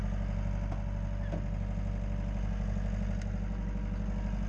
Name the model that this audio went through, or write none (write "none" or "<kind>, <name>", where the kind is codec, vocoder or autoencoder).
none